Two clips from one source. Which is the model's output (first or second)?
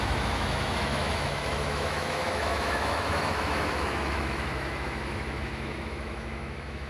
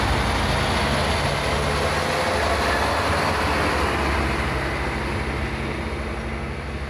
first